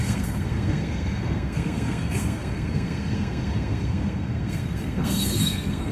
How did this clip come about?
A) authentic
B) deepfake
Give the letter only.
B